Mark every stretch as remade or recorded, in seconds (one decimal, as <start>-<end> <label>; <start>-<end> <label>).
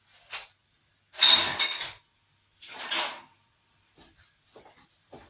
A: 0.0-5.3 recorded